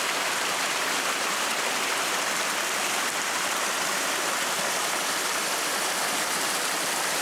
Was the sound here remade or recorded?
remade